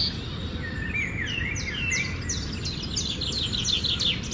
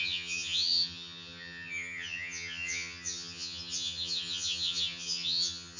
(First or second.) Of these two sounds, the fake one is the second